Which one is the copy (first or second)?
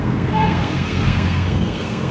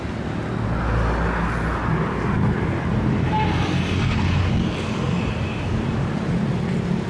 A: first